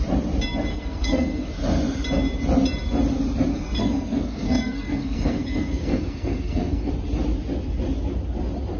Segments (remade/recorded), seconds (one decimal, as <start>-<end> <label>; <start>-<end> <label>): 0.0-0.7 recorded; 0.7-1.5 remade; 1.5-3.5 recorded; 3.5-6.9 remade; 6.9-8.8 recorded